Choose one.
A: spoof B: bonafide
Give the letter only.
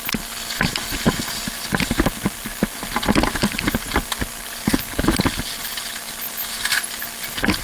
B